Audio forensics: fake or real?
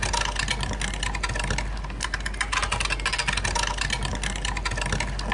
real